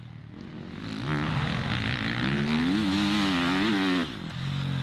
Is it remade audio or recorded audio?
recorded